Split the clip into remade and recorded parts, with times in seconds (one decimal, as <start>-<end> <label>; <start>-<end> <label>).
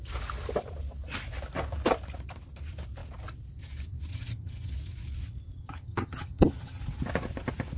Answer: 0.0-4.1 recorded; 4.1-4.7 remade; 4.7-5.6 recorded; 5.6-6.8 remade; 6.8-7.8 recorded